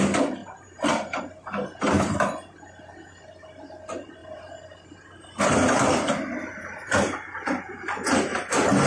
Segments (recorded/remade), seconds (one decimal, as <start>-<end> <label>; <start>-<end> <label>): 0.0-4.2 recorded; 4.2-7.6 remade; 7.6-8.3 recorded; 8.3-8.9 remade